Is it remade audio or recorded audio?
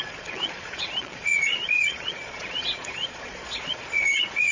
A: remade